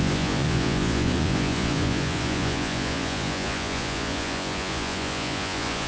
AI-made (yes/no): yes